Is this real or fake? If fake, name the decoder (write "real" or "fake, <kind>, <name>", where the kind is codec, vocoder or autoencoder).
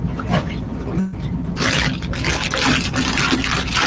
real